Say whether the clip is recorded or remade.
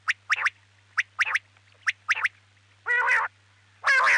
recorded